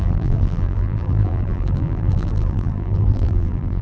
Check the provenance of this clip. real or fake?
fake